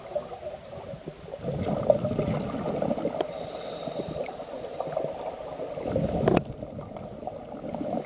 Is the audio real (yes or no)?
yes